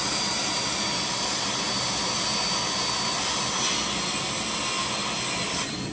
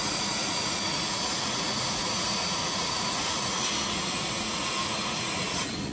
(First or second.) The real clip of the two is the first